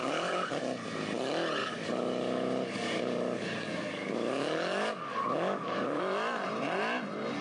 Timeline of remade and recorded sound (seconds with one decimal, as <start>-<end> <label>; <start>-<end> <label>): 0.0-0.6 remade; 0.6-1.6 recorded; 1.6-6.0 remade; 6.0-7.4 recorded